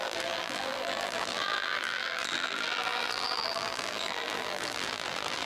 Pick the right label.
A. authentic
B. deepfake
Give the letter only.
B